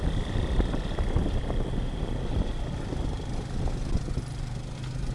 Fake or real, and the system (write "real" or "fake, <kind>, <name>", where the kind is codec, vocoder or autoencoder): real